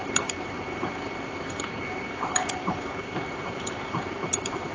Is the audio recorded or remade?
remade